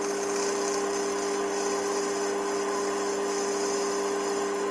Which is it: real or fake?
real